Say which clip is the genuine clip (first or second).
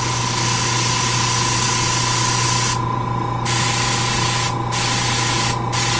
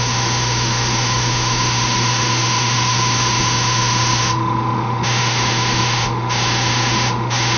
first